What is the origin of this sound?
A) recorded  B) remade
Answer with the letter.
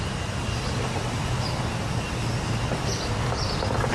A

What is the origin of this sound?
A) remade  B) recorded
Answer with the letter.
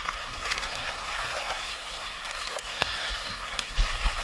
A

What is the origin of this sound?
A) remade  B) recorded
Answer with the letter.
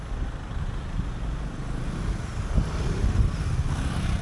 B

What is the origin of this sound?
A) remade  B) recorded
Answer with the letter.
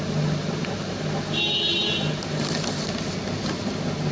B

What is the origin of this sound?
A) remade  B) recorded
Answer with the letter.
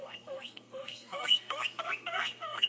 A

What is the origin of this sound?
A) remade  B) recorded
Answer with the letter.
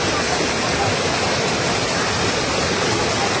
B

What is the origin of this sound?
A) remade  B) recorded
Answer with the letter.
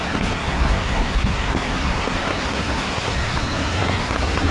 A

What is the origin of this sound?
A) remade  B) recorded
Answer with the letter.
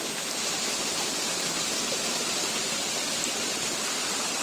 B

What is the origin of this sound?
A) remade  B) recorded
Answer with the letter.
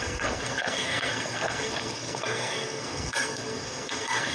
A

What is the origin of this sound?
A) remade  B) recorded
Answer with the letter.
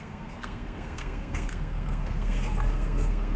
A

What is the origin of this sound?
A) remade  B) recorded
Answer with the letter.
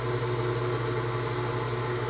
B